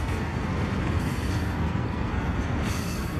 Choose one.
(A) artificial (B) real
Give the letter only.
A